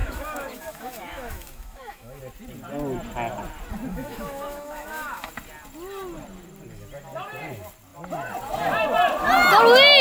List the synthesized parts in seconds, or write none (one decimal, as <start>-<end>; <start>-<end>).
0.0-2.2; 3.9-5.3